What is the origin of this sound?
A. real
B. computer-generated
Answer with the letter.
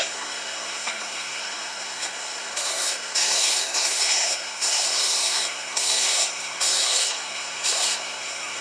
B